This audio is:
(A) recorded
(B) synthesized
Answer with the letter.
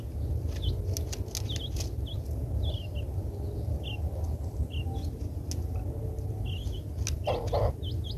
A